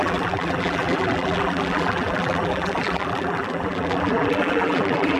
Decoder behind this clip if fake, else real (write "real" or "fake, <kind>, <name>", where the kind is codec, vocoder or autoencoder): fake, vocoder, BigVGAN v2